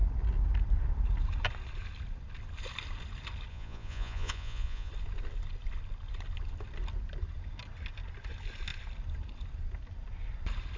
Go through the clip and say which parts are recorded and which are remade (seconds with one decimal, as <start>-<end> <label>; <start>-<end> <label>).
0.0-3.5 recorded; 3.5-4.9 remade; 4.9-10.8 recorded